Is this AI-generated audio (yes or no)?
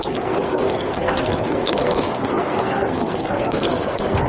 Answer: yes